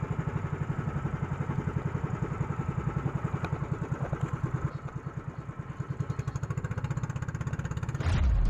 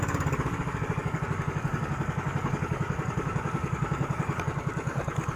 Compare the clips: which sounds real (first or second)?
first